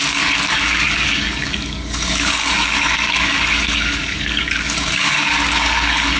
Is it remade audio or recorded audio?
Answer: remade